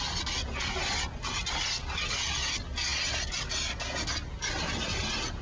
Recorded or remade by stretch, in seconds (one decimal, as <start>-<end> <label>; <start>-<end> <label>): 0.0-5.4 recorded